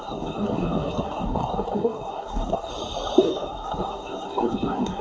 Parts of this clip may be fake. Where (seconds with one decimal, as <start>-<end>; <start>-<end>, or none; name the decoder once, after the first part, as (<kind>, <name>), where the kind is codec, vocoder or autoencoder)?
0.0-2.7 (codec, SNAC); 3.2-5.0